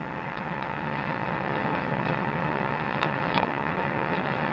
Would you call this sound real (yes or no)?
no